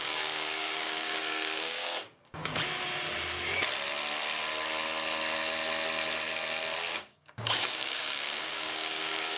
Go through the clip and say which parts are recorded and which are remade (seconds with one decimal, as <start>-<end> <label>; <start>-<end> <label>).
0.0-2.5 remade; 2.5-6.9 recorded; 6.9-9.4 remade

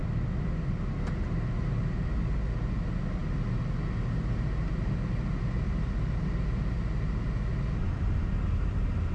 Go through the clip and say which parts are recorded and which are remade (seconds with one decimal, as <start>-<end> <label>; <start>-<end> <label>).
0.0-9.1 recorded

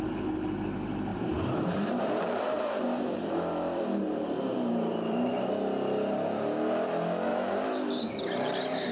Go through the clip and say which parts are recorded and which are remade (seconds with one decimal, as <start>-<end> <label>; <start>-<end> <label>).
0.0-1.1 recorded; 1.1-5.5 remade; 5.5-7.3 recorded; 7.3-8.1 remade; 8.1-8.9 recorded

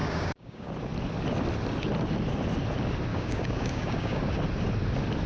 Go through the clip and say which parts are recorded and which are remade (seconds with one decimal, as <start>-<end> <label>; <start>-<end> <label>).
0.0-0.7 remade; 0.7-3.1 recorded; 3.1-4.2 remade; 4.2-5.3 recorded

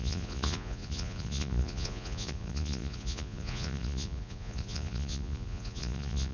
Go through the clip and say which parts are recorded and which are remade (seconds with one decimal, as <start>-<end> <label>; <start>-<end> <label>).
0.0-6.3 remade